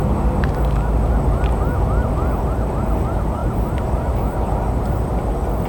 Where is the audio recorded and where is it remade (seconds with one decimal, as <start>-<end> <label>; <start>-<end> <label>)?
0.0-3.4 recorded; 3.4-5.2 remade; 5.2-5.7 recorded